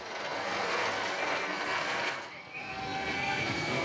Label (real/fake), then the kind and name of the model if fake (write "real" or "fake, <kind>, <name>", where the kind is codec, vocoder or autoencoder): fake, codec, SNAC